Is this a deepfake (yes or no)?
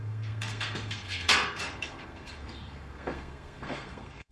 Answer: yes